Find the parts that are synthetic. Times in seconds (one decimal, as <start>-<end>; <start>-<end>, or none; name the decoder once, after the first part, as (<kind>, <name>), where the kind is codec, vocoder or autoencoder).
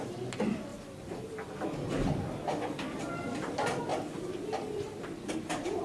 0.7-3.0 (vocoder, BigVGAN v2); 3.9-5.0